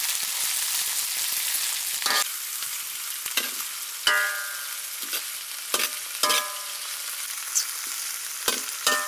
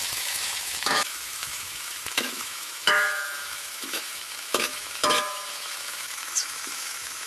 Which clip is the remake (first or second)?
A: second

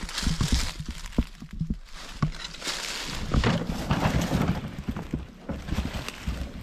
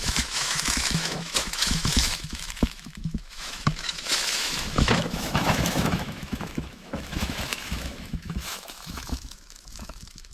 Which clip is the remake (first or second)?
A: second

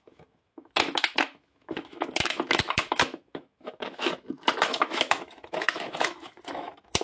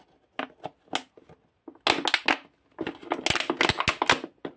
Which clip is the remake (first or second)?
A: first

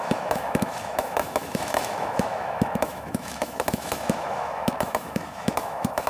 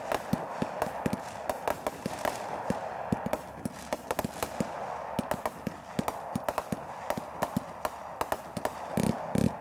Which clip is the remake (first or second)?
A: first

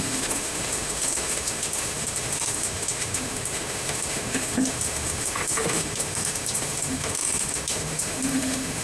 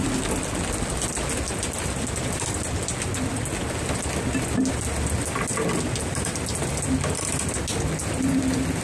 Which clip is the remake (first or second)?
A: first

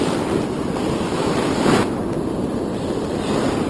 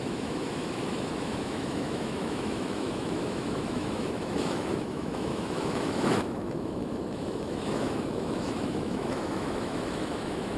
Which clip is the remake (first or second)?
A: second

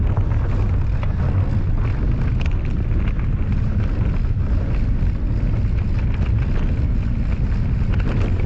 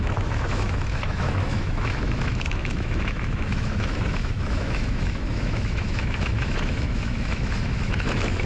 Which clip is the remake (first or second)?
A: second